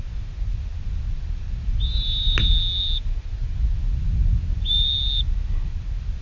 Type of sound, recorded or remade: recorded